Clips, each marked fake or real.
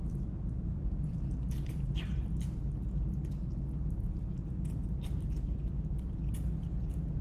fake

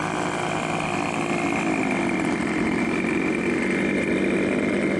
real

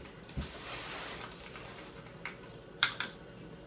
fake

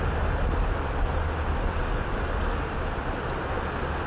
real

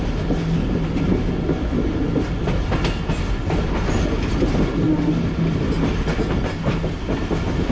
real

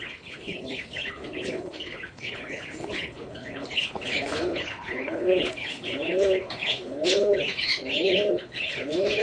fake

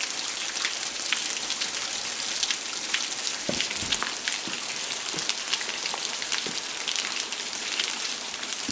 real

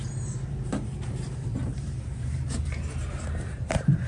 fake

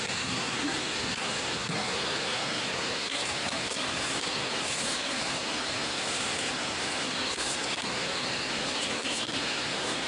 fake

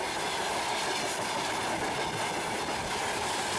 real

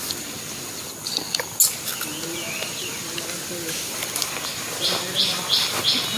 real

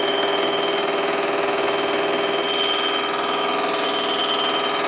real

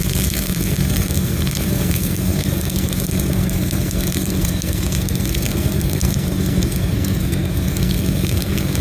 fake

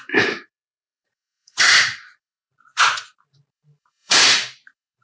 fake